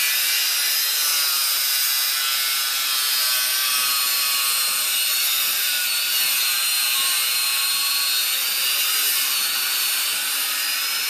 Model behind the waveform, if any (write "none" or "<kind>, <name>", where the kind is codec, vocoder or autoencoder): none